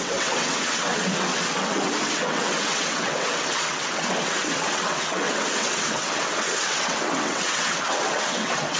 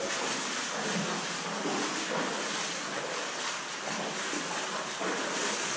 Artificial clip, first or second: first